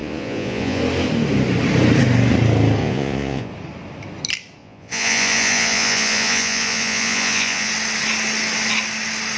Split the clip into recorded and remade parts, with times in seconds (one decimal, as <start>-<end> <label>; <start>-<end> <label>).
0.0-0.8 remade; 0.8-2.8 recorded; 2.8-3.5 remade; 3.5-4.6 recorded; 4.6-7.7 remade; 7.7-9.4 recorded

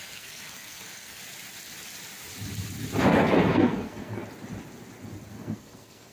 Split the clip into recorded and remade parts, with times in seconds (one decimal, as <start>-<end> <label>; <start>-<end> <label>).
0.0-1.2 remade; 1.2-3.0 recorded; 3.0-4.2 remade; 4.2-5.3 recorded; 5.3-6.1 remade

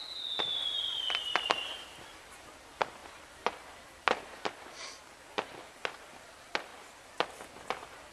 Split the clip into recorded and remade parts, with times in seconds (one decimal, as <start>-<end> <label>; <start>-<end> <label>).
0.0-0.5 recorded; 0.5-2.2 remade; 2.2-3.0 recorded; 3.0-5.3 remade; 5.3-6.7 recorded; 6.7-7.4 remade; 7.4-8.1 recorded

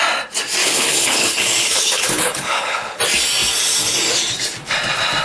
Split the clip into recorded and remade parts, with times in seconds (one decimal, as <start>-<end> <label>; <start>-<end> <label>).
0.0-0.6 recorded; 0.6-3.0 remade; 3.0-5.2 recorded

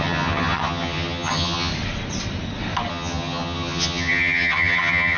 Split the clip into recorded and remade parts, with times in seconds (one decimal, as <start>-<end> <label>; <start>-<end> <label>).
0.0-1.7 remade; 1.7-2.9 recorded; 2.9-5.2 remade